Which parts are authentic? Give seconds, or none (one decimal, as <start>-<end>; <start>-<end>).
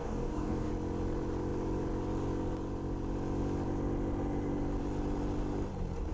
0.7-6.1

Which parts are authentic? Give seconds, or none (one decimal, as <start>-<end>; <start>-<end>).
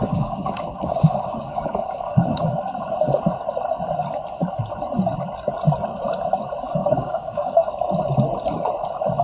3.2-6.8; 7.7-9.2